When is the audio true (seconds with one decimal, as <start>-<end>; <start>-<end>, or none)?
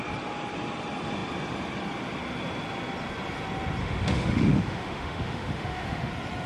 0.0-3.8; 6.1-6.5